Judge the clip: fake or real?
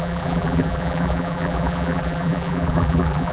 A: fake